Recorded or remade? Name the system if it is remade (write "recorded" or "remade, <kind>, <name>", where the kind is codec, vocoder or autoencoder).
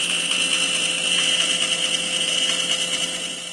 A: recorded